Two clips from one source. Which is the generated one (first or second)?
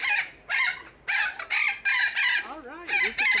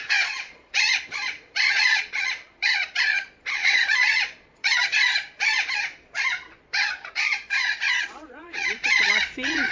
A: second